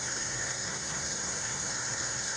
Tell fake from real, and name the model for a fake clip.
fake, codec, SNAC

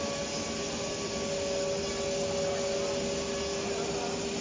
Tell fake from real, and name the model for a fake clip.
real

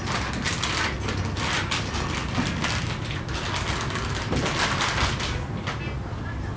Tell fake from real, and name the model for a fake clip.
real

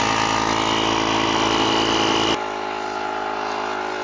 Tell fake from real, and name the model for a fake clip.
real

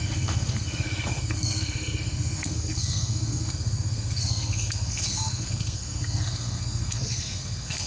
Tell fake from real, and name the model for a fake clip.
fake, codec, SNAC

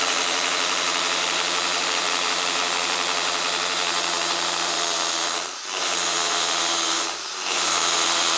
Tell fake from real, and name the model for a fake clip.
fake, vocoder, BigVGAN v2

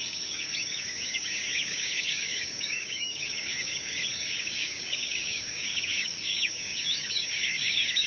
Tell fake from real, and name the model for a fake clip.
fake, codec, DAC